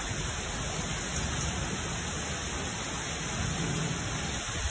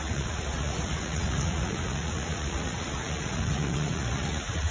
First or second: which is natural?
first